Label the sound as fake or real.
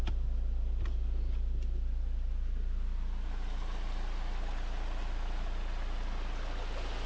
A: real